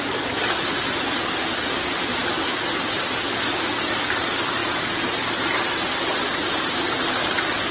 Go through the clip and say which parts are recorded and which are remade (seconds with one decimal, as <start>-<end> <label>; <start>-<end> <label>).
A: 0.0-7.7 recorded